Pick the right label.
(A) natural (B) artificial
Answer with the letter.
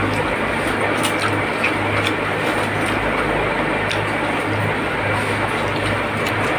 A